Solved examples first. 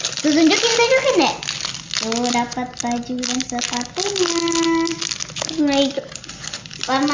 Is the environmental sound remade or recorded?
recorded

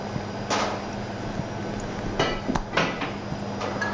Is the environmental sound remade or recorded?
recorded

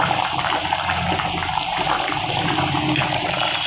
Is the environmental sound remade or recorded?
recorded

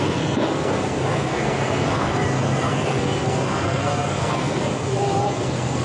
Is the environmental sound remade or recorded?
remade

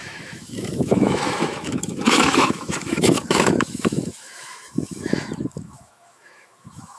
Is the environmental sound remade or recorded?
remade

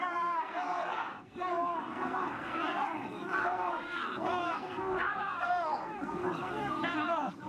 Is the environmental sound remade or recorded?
remade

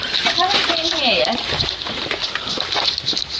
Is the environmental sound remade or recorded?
remade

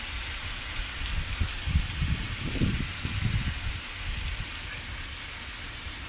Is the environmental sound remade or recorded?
recorded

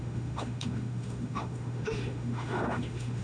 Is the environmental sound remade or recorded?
remade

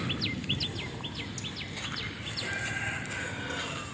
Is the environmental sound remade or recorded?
recorded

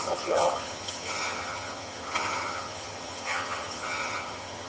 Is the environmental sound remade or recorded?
remade